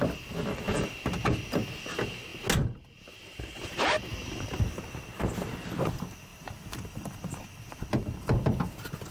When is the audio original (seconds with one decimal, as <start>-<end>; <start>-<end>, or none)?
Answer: 0.0-4.1; 4.8-6.3; 7.8-9.1